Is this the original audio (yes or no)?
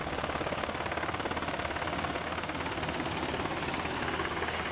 yes